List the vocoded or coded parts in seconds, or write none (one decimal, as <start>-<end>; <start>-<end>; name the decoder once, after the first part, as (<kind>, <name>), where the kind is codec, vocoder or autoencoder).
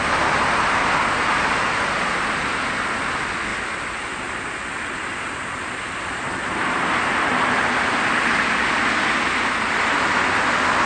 none